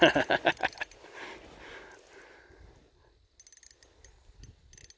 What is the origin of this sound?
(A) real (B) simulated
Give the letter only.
A